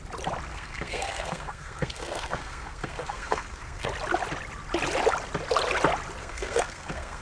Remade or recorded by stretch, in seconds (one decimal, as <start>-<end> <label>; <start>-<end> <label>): 0.0-0.5 recorded; 0.5-3.9 remade; 3.9-6.2 recorded; 6.2-7.2 remade

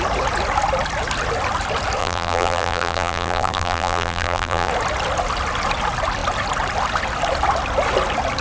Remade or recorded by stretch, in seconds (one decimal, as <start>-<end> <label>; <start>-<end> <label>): 0.0-2.0 recorded; 2.0-4.7 remade; 4.7-8.4 recorded

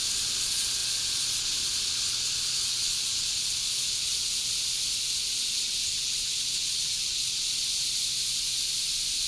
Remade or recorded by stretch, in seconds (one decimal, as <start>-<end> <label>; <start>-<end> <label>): 0.0-4.1 remade; 4.1-5.5 recorded; 5.5-7.6 remade; 7.6-9.3 recorded

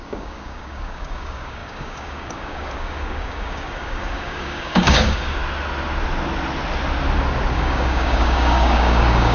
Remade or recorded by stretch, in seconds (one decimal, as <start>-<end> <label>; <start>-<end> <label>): 0.0-5.4 remade; 5.4-7.5 recorded; 7.5-9.3 remade

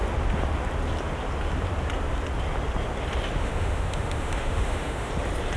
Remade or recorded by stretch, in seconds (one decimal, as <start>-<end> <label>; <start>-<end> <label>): 0.0-3.4 recorded; 3.4-5.1 remade; 5.1-5.6 recorded

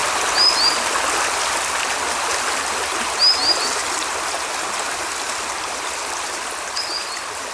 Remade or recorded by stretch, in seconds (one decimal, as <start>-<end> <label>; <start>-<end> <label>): 0.0-7.5 recorded